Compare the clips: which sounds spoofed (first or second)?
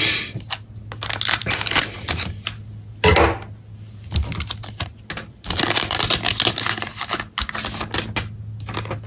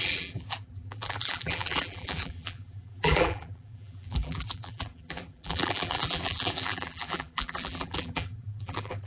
second